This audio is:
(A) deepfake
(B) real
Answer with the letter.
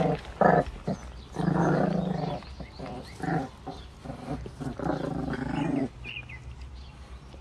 B